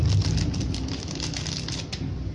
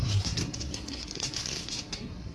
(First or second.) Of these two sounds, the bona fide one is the first